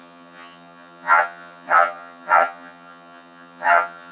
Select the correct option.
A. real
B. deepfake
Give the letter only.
B